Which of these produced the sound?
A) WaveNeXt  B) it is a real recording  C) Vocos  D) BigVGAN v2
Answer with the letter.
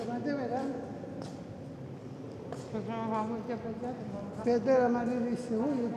B